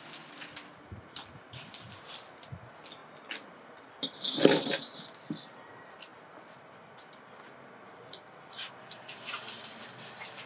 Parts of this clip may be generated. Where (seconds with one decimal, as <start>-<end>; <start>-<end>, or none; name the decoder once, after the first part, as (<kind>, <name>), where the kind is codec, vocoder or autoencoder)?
none